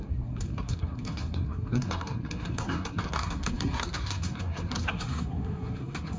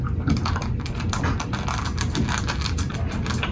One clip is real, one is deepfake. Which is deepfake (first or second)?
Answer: first